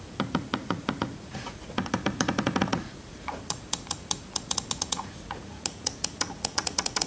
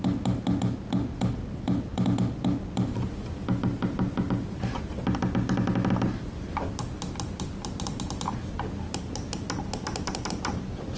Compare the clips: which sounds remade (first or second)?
first